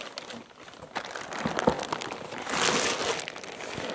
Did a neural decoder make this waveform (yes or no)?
no